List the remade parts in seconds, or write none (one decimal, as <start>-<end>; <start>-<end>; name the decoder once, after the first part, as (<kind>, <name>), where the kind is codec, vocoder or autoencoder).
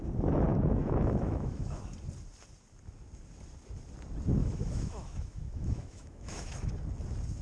0.5-1.8 (autoencoder, DAC-VAE); 4.4-6.7